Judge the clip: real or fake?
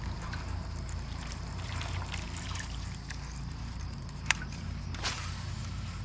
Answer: fake